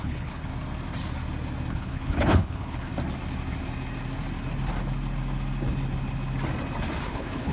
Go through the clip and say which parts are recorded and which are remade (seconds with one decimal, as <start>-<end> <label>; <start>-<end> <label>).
0.0-0.5 remade; 0.5-1.7 recorded; 1.7-2.9 remade; 2.9-7.0 recorded; 7.0-7.5 remade